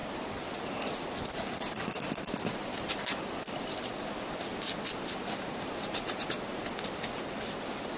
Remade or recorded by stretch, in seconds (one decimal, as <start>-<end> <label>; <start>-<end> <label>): 0.0-8.0 recorded